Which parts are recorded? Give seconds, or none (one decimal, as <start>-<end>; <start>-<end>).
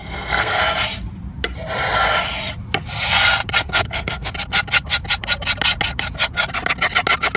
0.6-3.6; 4.3-7.4